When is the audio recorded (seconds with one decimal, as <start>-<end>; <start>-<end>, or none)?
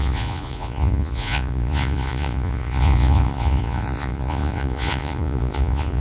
none